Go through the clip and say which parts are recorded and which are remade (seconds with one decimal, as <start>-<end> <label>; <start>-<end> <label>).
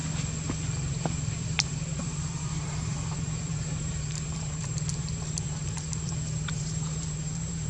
0.0-0.9 recorded; 0.9-7.7 remade